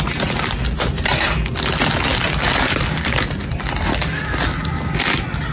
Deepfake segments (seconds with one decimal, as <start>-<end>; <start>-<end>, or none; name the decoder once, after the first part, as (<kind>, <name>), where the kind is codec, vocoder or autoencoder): none